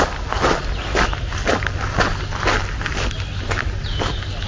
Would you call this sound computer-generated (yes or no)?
no